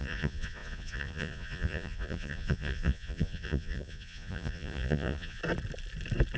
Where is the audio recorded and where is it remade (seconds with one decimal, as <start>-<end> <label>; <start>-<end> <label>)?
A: 0.0-5.4 remade; 5.4-6.4 recorded